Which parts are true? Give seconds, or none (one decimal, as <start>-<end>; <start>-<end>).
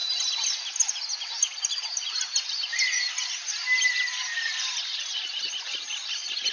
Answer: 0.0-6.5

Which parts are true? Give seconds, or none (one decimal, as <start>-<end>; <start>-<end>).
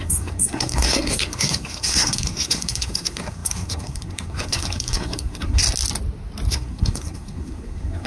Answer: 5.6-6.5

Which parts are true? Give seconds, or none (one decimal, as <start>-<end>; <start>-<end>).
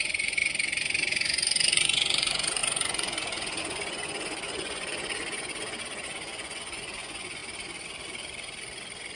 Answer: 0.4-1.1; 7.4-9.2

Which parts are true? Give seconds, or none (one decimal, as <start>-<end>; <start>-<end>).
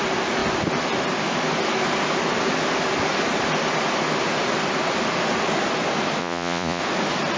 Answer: 0.0-6.2; 6.8-7.4